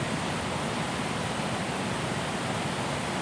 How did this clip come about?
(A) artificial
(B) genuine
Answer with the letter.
B